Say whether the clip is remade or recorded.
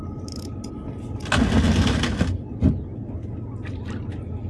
recorded